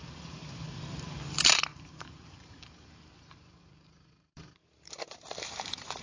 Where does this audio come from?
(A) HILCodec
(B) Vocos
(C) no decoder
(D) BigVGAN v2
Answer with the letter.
D